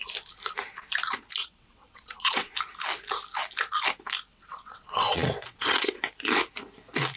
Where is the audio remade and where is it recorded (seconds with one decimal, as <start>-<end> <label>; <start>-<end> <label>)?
0.0-1.4 recorded; 1.4-2.5 remade; 2.5-4.3 recorded; 4.3-6.0 remade; 6.0-7.2 recorded